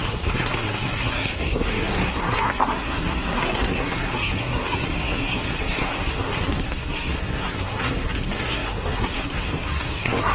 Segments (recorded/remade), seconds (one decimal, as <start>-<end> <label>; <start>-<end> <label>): 0.0-10.3 remade